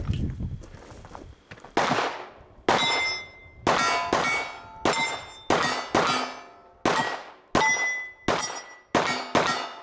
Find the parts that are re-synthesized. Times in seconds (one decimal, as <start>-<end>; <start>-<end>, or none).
none